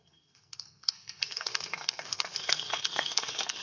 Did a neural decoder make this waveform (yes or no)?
yes